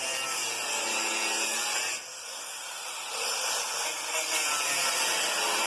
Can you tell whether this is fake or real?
real